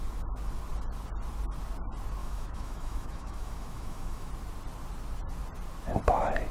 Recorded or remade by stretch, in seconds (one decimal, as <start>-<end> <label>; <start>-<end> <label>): 0.0-2.2 recorded; 2.2-4.3 remade; 4.3-6.5 recorded